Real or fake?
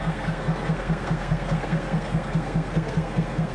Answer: fake